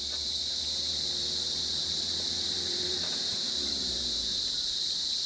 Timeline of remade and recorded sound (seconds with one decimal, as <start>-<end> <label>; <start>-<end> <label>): 0.0-5.3 remade

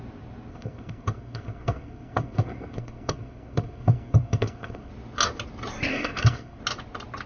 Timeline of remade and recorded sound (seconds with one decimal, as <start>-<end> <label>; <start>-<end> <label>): 0.0-0.5 recorded; 0.5-4.9 remade; 4.9-5.9 recorded; 5.9-6.6 remade; 6.6-7.3 recorded

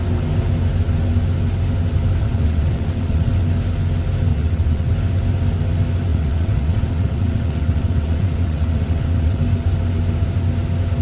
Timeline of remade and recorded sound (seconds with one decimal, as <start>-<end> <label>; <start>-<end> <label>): 0.0-2.2 recorded; 2.2-3.3 remade; 3.3-4.3 recorded; 4.3-4.9 remade; 4.9-6.1 recorded; 6.1-9.4 remade; 9.4-11.0 recorded

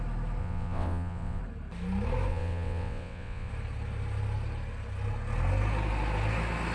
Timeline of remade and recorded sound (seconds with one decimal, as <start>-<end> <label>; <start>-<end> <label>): 0.0-0.4 recorded; 0.4-1.4 remade; 1.4-2.3 recorded; 2.3-3.5 remade; 3.5-6.7 recorded

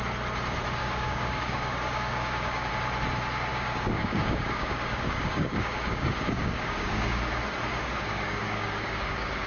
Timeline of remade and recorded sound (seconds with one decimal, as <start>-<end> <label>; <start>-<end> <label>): 0.0-0.8 recorded; 0.8-2.7 remade; 2.7-3.5 recorded; 3.5-7.3 remade; 7.3-7.7 recorded; 7.7-9.5 remade

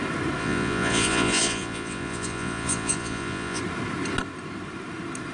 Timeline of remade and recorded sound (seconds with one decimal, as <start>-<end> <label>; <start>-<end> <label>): 0.0-0.4 recorded; 0.4-3.6 remade; 3.6-5.3 recorded